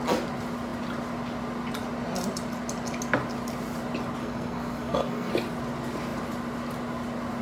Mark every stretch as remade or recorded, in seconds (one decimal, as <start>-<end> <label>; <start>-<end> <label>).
0.0-4.2 recorded; 4.2-5.3 remade; 5.3-7.4 recorded